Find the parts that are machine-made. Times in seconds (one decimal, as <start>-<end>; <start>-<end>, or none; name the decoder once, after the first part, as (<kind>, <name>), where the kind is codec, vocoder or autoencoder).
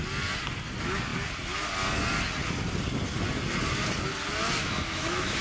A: 4.6-5.4 (autoencoder, DAC-VAE)